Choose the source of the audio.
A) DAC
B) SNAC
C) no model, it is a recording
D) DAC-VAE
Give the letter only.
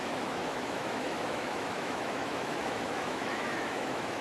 D